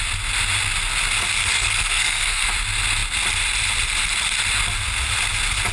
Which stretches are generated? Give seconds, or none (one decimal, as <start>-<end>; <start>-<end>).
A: 1.4-2.5